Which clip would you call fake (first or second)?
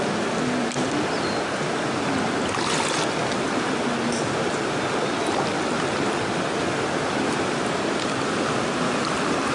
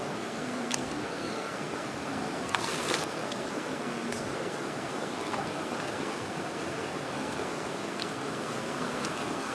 second